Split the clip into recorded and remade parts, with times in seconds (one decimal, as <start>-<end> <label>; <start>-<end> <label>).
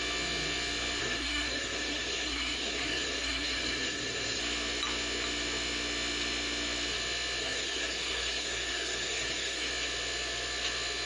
0.0-1.0 recorded; 1.0-4.4 remade; 4.4-7.4 recorded; 7.4-9.7 remade; 9.7-11.1 recorded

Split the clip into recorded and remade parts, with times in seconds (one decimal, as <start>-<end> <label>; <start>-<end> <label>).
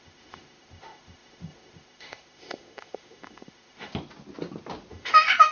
0.0-3.9 remade; 3.9-4.9 recorded; 4.9-5.5 remade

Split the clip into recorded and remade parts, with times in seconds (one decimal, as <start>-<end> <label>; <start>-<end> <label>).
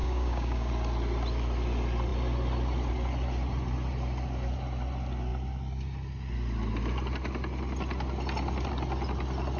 0.0-0.7 remade; 0.7-9.6 recorded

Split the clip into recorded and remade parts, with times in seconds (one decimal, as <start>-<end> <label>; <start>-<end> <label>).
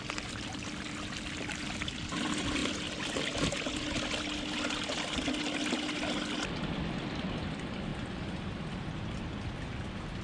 0.0-10.2 recorded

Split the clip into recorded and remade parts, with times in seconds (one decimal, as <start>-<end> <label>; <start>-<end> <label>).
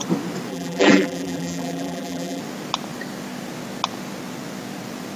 0.0-0.5 recorded; 0.5-2.4 remade; 2.4-5.2 recorded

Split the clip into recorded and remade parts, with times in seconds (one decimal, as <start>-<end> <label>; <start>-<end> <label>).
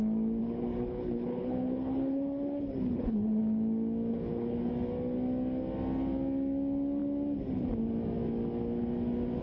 0.0-0.4 recorded; 0.4-3.4 remade; 3.4-4.1 recorded; 4.1-4.7 remade; 4.7-9.4 recorded